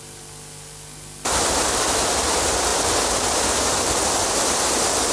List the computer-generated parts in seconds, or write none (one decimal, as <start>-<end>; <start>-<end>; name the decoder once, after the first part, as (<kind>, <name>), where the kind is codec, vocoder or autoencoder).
none